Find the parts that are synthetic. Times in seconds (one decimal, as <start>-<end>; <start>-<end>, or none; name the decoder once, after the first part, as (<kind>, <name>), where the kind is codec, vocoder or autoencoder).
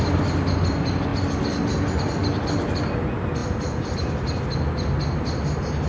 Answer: none